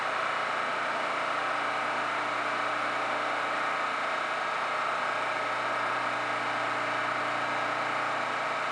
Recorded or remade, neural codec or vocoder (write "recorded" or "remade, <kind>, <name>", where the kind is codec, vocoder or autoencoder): recorded